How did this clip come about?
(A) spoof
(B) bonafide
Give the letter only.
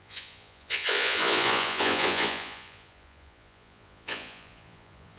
A